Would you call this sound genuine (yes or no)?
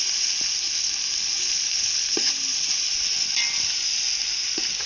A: yes